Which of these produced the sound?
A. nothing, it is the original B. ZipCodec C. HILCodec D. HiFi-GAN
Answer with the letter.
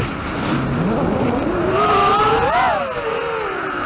A